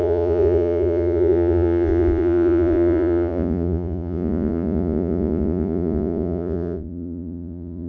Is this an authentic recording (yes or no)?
no